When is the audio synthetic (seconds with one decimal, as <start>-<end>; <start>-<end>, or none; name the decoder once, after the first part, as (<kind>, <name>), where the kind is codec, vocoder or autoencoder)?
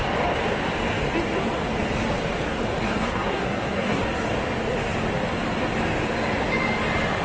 2.5-4.0 (codec, SNAC)